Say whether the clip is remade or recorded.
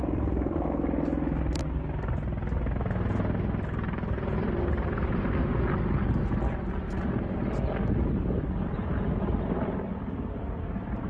recorded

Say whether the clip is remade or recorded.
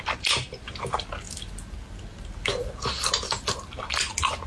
recorded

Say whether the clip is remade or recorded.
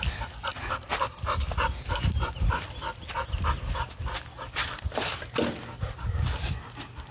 recorded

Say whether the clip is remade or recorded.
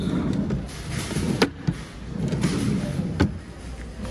recorded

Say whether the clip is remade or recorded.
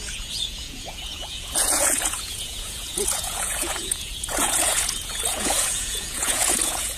remade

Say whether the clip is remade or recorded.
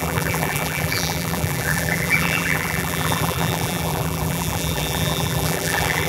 remade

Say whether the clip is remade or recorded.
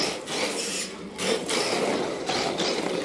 recorded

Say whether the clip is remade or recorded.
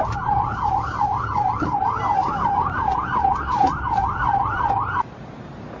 remade